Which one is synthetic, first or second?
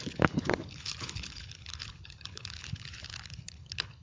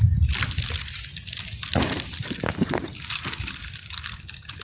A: first